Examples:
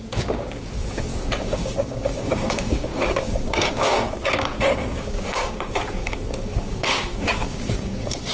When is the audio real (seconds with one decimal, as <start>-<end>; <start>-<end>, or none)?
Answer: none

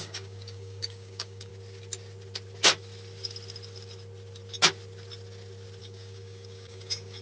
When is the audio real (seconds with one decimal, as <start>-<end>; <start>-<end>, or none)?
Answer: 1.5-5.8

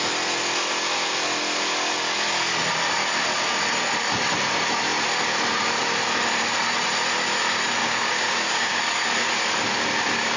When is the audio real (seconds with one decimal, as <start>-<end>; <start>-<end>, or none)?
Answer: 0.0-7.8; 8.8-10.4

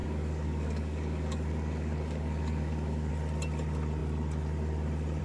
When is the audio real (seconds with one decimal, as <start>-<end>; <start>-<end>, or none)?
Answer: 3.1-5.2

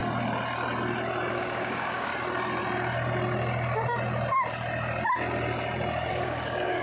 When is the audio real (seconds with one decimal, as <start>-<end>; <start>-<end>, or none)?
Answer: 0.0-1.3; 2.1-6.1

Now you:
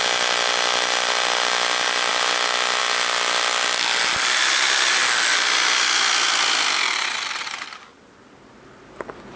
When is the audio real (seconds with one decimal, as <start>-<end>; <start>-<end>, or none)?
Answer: 0.0-9.4

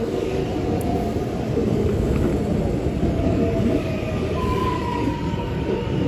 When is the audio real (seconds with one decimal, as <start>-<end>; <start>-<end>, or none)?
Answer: 0.4-1.5; 2.3-3.0

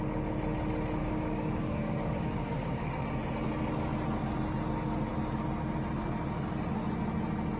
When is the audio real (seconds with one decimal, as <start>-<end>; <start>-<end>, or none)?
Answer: 0.0-1.0; 3.0-7.6